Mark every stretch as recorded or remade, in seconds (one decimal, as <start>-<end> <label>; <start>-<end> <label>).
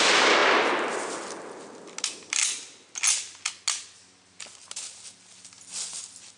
0.0-6.4 recorded